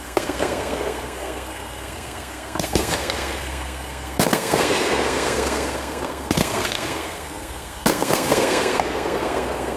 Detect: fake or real fake